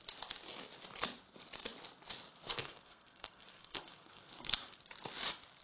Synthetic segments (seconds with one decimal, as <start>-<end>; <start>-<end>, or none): 2.5-4.3